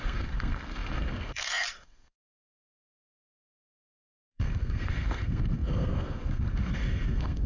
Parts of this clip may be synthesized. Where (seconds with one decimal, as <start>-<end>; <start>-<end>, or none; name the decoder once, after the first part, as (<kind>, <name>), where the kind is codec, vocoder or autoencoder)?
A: 0.0-7.5 (codec, SNAC)